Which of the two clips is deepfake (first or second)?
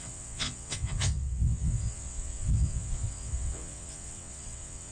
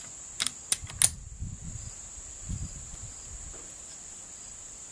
first